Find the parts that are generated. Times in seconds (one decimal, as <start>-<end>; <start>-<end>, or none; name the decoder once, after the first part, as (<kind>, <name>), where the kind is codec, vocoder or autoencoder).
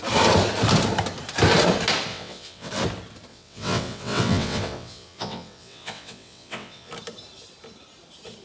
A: 2.1-2.7 (vocoder, WaveNeXt); 3.3-6.9